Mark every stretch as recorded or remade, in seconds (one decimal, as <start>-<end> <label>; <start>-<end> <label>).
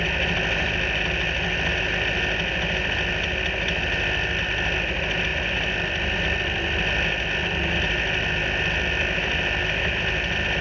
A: 0.0-10.6 recorded